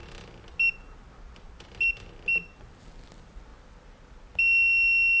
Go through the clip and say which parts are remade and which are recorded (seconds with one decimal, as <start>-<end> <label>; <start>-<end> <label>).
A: 0.0-5.2 recorded